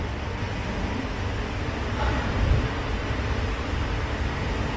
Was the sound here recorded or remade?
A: recorded